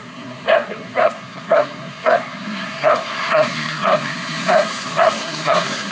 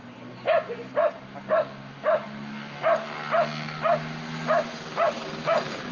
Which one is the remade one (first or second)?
first